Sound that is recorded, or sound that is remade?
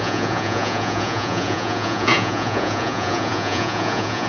remade